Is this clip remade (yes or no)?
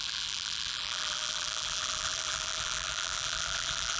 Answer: yes